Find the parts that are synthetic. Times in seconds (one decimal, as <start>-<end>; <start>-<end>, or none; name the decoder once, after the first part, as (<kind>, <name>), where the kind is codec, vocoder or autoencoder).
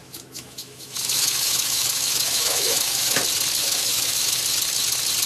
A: 0.0-3.2 (autoencoder, DAC-VAE); 3.6-4.4